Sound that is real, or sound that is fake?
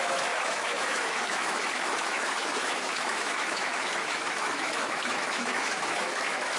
fake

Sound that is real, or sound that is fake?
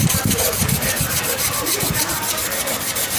fake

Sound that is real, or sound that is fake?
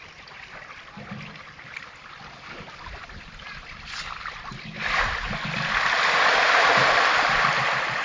real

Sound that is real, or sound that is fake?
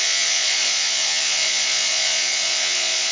fake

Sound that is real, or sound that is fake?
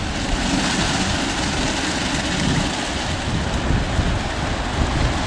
real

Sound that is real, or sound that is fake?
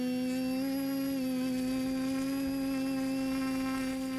real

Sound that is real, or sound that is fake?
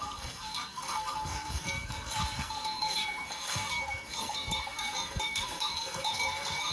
fake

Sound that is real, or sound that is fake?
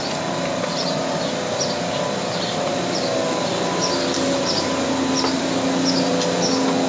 real